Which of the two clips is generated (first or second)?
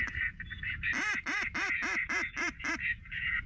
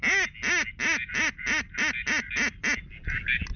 first